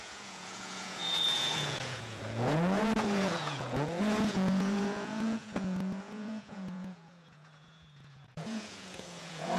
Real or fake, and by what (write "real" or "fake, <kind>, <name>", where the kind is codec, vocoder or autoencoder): fake, vocoder, Vocos